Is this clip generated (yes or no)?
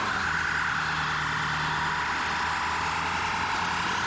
no